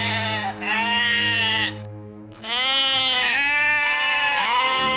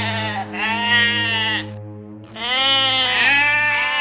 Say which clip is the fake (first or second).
first